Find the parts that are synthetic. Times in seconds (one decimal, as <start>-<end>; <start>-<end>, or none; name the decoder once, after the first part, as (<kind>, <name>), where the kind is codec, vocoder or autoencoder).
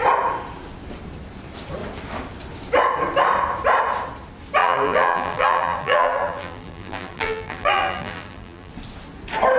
4.6-8.7 (vocoder, BigVGAN v2)